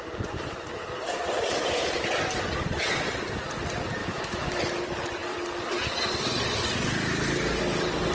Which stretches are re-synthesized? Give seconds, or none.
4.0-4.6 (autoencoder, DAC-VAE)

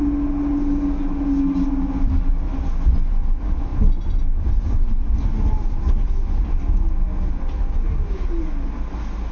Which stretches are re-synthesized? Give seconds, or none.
none

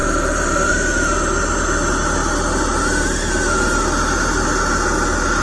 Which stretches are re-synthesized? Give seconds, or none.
0.0-0.7 (vocoder, BigVGAN v2)

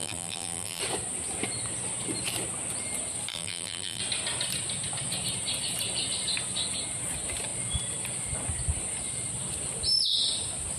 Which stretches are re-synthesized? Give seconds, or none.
0.0-0.8 (vocoder, BigVGAN v2); 3.3-4.0

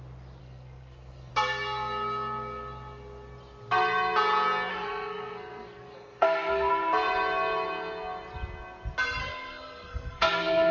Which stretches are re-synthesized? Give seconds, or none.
0.4-1.3 (codec, SNAC); 4.7-6.7; 9.2-10.7

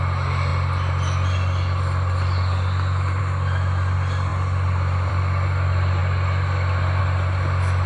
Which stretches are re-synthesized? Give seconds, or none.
none

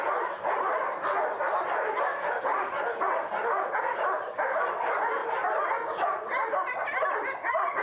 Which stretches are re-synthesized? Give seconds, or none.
none